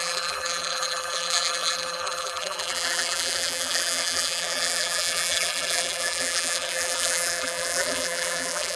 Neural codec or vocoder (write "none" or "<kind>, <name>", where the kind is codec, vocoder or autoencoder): vocoder, BigVGAN v2